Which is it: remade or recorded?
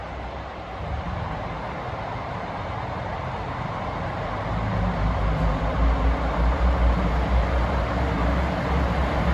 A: remade